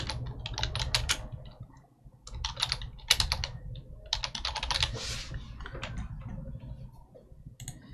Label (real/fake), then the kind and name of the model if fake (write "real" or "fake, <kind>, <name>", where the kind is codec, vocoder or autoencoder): real